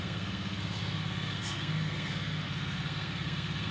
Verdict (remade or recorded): remade